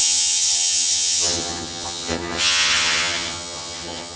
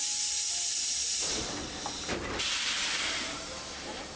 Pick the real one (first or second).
second